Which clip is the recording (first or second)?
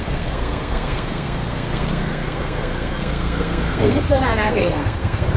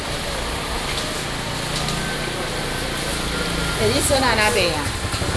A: second